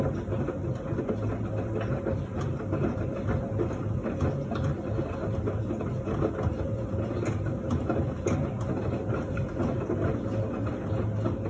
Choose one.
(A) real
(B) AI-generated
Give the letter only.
A